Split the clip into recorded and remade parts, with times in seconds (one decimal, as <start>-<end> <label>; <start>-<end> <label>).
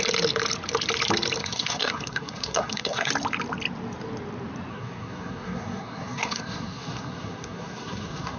0.0-1.4 recorded; 1.4-3.1 remade; 3.1-4.7 recorded; 4.7-8.4 remade